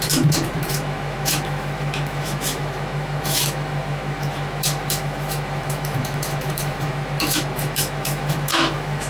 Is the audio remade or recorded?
remade